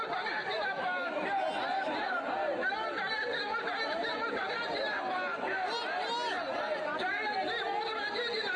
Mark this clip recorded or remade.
recorded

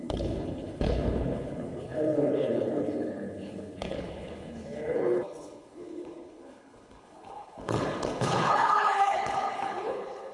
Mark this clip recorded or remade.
remade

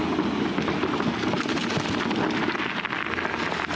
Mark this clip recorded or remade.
recorded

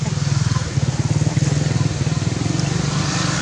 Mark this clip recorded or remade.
recorded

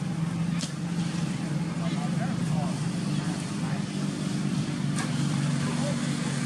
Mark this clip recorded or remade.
remade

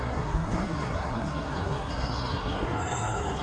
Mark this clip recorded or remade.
remade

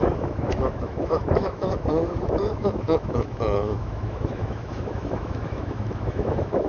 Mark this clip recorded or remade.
remade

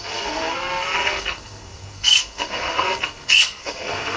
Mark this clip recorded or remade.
remade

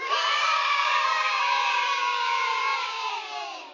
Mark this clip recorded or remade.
remade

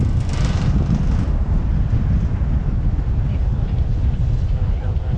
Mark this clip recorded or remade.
recorded